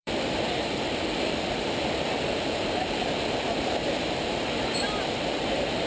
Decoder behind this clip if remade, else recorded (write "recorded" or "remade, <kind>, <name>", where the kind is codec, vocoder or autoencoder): remade, vocoder, BigVGAN v2